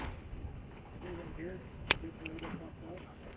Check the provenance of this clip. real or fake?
fake